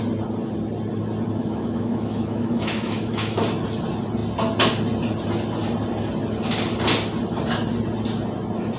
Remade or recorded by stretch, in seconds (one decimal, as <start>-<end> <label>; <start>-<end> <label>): 0.0-1.4 recorded; 1.4-3.4 remade; 3.4-8.8 recorded